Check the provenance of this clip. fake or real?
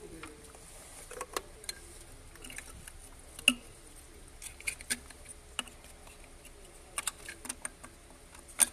real